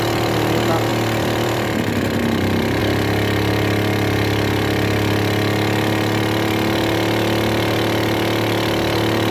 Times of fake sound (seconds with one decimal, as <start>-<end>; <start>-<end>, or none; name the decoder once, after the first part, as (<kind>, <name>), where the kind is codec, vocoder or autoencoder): 0.9-2.8 (vocoder, BigVGAN v2)